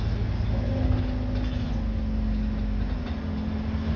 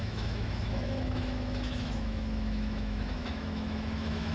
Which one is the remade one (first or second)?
second